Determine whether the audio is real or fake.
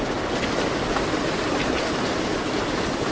real